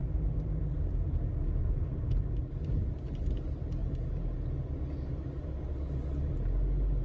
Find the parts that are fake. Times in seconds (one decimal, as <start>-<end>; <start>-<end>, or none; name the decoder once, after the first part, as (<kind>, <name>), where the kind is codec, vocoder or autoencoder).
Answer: 1.6-2.3 (vocoder, BigVGAN v2)